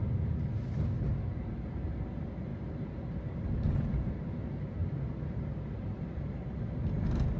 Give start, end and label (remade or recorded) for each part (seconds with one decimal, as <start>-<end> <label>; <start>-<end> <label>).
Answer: 0.0-1.3 recorded; 1.3-7.4 remade